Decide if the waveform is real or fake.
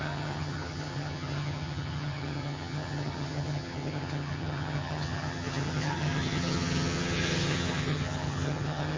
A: fake